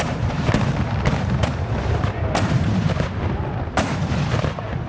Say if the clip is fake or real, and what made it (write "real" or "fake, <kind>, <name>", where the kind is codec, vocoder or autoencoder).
fake, vocoder, BigVGAN v2